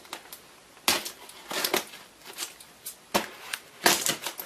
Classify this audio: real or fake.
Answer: real